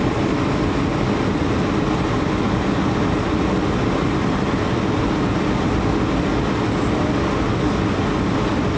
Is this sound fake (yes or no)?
no